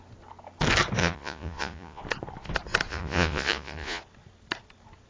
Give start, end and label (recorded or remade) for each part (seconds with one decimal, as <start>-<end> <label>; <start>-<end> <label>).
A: 0.0-1.0 recorded; 1.0-2.0 remade; 2.0-2.9 recorded; 2.9-4.0 remade; 4.0-5.1 recorded